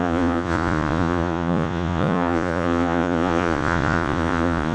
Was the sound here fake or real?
fake